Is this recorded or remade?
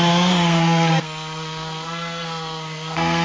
remade